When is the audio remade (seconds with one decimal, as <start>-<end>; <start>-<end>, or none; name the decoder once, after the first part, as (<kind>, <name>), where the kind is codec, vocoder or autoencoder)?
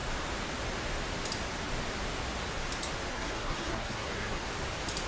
3.1-4.5 (codec, SNAC)